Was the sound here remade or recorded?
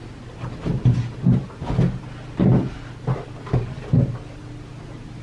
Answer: recorded